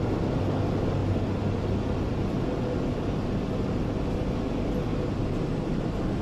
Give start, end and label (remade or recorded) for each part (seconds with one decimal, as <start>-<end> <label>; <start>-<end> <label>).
0.0-6.2 recorded